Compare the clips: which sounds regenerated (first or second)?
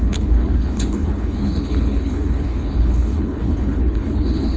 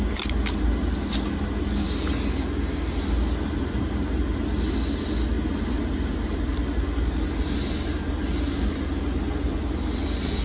first